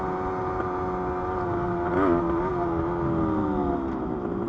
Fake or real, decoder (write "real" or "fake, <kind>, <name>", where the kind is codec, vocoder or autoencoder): real